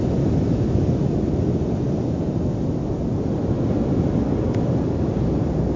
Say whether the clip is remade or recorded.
recorded